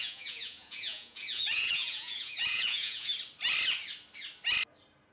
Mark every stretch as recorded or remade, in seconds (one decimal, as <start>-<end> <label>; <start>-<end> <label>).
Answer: 0.0-3.1 remade; 3.1-5.1 recorded